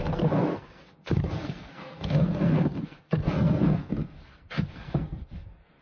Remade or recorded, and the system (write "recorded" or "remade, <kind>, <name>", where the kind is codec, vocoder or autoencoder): remade, codec, SNAC